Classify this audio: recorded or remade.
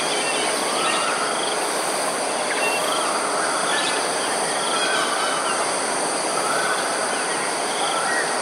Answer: recorded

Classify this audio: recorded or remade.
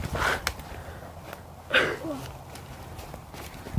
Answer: recorded